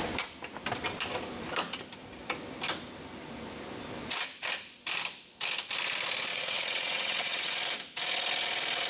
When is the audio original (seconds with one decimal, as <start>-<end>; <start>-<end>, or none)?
0.0-6.3; 7.5-8.9